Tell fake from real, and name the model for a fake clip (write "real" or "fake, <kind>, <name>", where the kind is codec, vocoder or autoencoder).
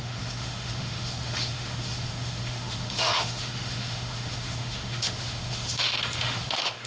fake, autoencoder, DAC-VAE